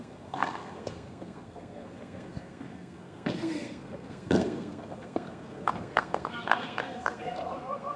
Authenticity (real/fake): fake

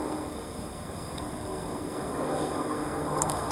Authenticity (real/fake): fake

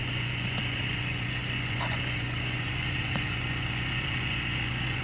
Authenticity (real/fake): fake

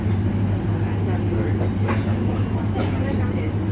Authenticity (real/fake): real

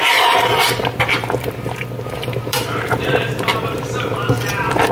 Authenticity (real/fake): fake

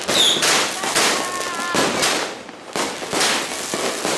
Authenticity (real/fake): real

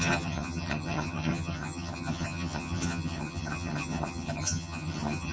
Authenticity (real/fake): fake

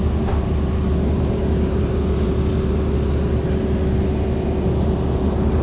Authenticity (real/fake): real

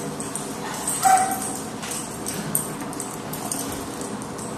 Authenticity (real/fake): real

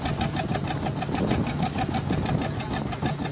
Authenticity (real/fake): real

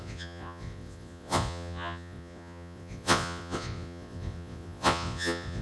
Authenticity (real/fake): fake